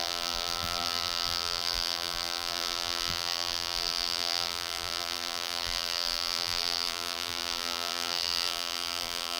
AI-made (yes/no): yes